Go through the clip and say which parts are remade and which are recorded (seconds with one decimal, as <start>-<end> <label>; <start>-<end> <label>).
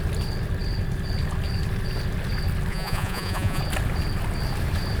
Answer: 0.0-2.7 recorded; 2.7-3.6 remade; 3.6-5.0 recorded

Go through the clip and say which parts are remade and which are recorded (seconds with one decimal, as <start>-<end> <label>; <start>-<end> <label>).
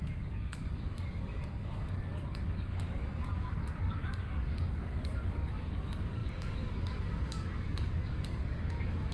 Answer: 0.0-9.1 remade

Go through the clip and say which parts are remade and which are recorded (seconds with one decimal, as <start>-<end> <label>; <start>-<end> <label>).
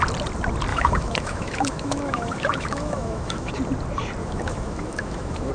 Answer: 0.0-0.7 recorded; 0.7-3.5 remade; 3.5-4.2 recorded; 4.2-5.5 remade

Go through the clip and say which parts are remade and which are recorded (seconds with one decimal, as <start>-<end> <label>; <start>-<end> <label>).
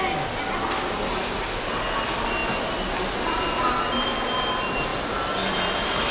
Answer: 0.0-6.1 recorded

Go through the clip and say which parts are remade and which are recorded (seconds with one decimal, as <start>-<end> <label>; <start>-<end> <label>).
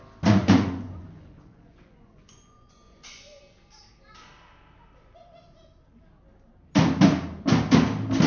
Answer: 0.0-0.4 recorded; 0.4-3.4 remade; 3.4-8.3 recorded